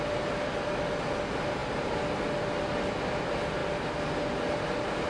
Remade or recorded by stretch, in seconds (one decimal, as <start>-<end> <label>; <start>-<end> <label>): 0.0-5.1 recorded